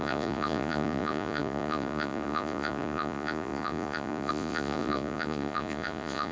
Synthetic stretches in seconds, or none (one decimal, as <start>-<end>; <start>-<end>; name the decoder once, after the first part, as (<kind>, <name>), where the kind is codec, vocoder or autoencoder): 0.0-6.3 (vocoder, Vocos)